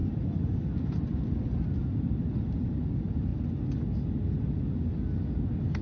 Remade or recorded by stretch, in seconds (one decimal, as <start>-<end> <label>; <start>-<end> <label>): 0.0-3.3 remade; 3.3-5.8 recorded